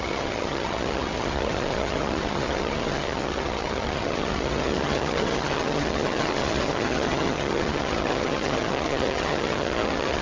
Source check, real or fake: fake